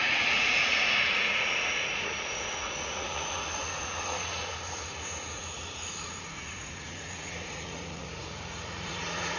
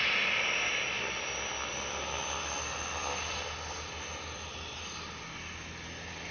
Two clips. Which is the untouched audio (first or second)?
second